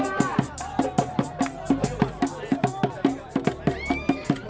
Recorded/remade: recorded